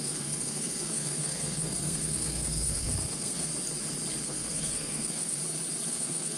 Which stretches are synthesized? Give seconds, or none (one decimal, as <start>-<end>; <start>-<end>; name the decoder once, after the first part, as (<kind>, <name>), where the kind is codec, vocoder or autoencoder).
0.0-3.5 (codec, SNAC); 4.2-5.4; 5.9-6.4